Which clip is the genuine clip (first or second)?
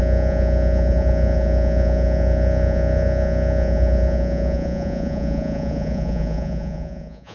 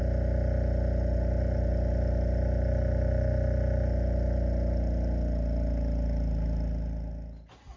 second